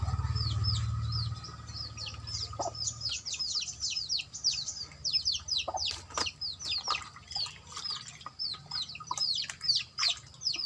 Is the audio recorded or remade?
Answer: recorded